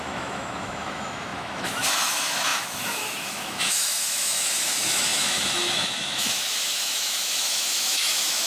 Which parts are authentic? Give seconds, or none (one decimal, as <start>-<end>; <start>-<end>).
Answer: none